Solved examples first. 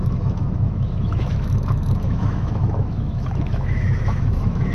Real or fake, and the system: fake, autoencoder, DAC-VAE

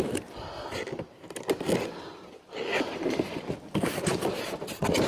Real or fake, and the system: real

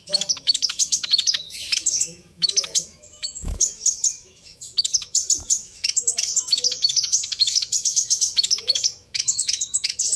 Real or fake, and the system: fake, autoencoder, DAC-VAE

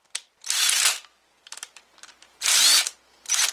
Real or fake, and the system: real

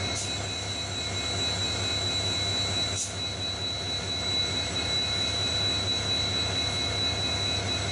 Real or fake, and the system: real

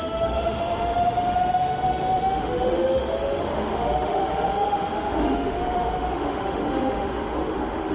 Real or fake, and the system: fake, autoencoder, DAC-VAE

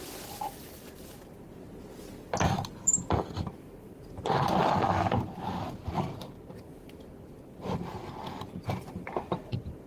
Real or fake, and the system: real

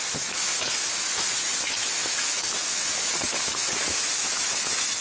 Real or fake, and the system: fake, autoencoder, DAC-VAE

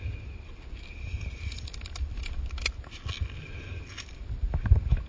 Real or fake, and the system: real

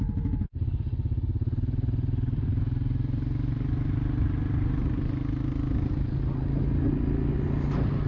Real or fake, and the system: real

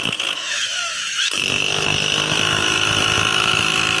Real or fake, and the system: fake, autoencoder, DAC-VAE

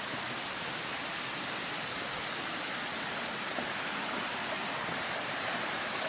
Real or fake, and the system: real